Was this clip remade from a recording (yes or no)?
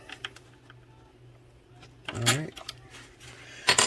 no